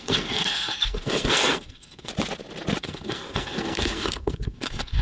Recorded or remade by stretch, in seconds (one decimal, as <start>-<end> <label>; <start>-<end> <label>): 0.0-2.1 remade; 2.1-2.8 recorded; 2.8-5.0 remade